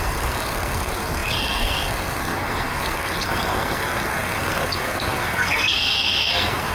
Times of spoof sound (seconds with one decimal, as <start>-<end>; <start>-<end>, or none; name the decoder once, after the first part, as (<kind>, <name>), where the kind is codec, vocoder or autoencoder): 0.0-6.7 (codec, SNAC)